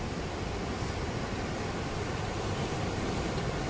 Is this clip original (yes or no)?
yes